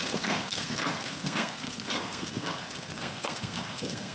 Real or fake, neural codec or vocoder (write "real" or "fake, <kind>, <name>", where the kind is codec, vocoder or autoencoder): fake, codec, SNAC